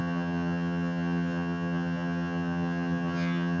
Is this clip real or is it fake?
fake